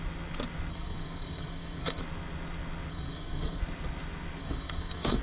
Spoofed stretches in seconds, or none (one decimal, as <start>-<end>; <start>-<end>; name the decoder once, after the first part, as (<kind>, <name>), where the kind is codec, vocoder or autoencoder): 0.7-2.0 (codec, SNAC); 2.9-3.6; 4.4-5.2